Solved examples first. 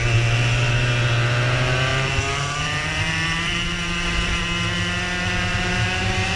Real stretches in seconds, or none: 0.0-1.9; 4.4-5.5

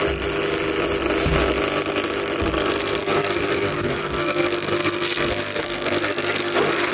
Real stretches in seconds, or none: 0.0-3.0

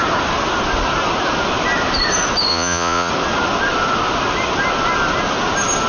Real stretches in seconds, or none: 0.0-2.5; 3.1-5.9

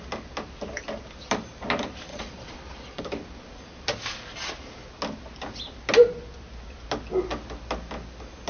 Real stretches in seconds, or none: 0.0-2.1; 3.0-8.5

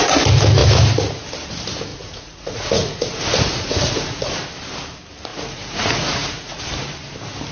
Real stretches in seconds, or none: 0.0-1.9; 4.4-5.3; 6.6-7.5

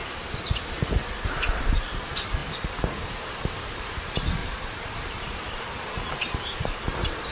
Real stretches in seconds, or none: 0.0-2.4; 3.9-4.4; 6.6-7.3

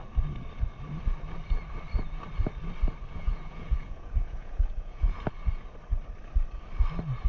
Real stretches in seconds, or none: 0.0-3.1; 5.2-7.3